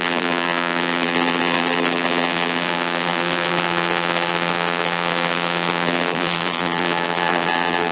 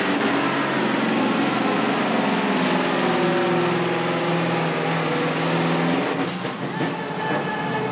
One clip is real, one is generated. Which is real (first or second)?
second